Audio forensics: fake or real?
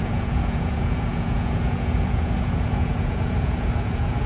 fake